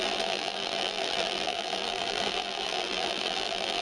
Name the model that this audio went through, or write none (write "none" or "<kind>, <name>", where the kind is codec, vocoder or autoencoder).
vocoder, BigVGAN v2